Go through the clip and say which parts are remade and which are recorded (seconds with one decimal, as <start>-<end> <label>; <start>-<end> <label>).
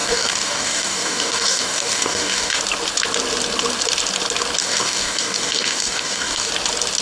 0.0-2.6 remade; 2.6-4.6 recorded; 4.6-6.5 remade; 6.5-7.0 recorded